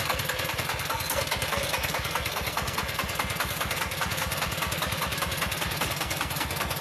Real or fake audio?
fake